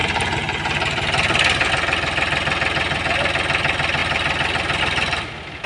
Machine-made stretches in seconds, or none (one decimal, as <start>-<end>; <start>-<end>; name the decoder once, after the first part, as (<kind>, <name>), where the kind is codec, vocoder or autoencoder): 0.0-1.7 (vocoder, BigVGAN v2)